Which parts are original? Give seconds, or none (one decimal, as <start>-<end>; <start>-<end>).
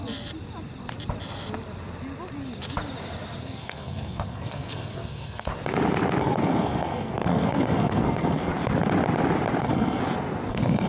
0.0-3.4; 5.5-6.2; 8.5-9.6; 10.0-10.5